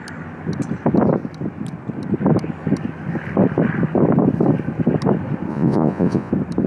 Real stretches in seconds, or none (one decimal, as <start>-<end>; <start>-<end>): 0.0-5.5; 6.3-6.7